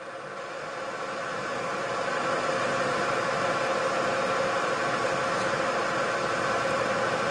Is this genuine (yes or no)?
yes